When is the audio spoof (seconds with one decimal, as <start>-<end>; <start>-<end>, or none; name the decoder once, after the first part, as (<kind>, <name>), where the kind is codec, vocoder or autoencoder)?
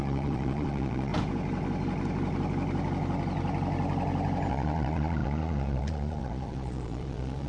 0.0-1.1 (vocoder, Vocos); 4.5-7.5